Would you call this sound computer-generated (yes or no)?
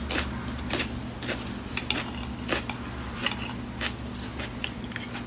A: no